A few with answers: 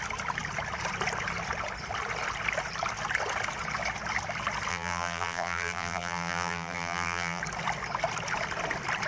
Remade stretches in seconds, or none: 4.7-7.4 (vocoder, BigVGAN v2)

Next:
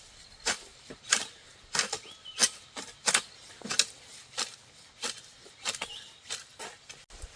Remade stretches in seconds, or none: 0.7-1.2 (vocoder, BigVGAN v2)

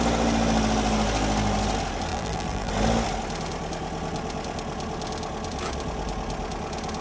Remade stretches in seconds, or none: 2.1-2.7 (vocoder, BigVGAN v2)